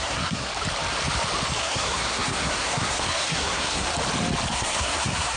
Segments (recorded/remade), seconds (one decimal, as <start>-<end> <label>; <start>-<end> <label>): 0.0-0.5 remade; 0.5-1.6 recorded; 1.6-3.9 remade; 3.9-4.5 recorded; 4.5-5.4 remade